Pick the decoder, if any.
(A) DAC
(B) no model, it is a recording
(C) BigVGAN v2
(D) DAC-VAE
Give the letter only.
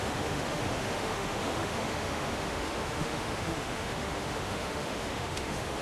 D